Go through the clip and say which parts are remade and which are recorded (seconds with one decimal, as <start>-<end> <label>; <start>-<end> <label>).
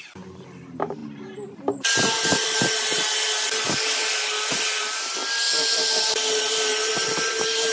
0.0-7.7 recorded